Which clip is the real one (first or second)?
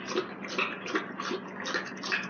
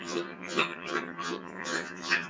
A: first